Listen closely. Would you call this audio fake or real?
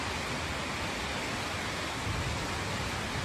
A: real